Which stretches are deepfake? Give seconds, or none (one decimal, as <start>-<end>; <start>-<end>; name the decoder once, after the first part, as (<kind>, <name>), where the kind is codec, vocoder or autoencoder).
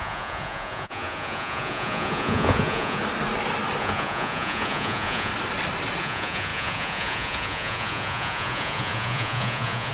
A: 0.0-3.0 (vocoder, Vocos); 3.8-5.3; 6.0-9.9